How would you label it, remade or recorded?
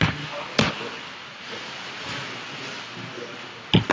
recorded